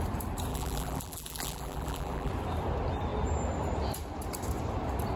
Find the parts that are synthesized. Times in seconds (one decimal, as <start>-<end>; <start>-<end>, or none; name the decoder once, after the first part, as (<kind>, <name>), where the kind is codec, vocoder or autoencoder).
0.5-2.3 (vocoder, BigVGAN v2)